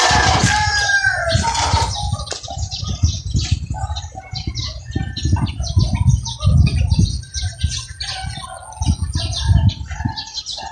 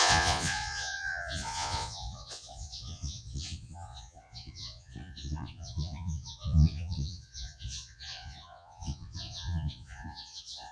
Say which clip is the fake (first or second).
second